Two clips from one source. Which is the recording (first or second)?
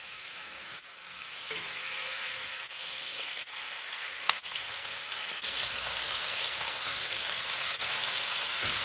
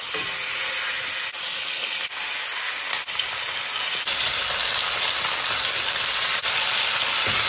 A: second